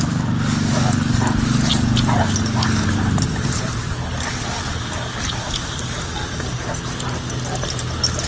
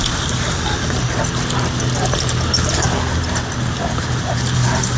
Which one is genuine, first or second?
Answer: first